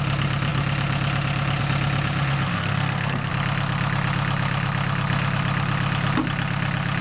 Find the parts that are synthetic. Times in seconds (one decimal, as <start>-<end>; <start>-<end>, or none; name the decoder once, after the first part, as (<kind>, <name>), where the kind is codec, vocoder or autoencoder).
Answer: 2.5-3.3 (codec, SNAC)